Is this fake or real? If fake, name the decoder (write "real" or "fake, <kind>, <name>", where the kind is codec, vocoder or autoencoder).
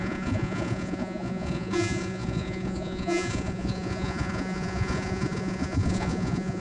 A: fake, vocoder, Vocos